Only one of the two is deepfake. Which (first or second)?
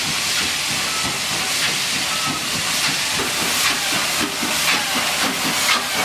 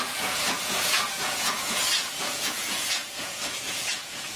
second